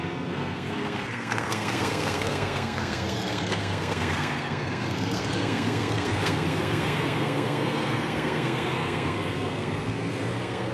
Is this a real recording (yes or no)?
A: no